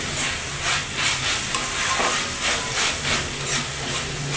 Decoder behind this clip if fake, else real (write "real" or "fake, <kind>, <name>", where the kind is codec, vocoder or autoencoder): real